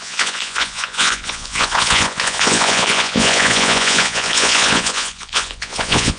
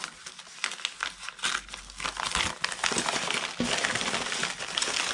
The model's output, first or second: first